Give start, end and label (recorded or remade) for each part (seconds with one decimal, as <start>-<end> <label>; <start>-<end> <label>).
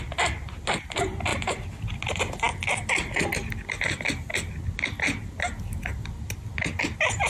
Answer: 0.0-7.3 recorded